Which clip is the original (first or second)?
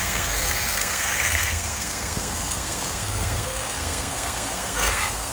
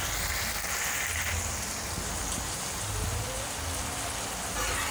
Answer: second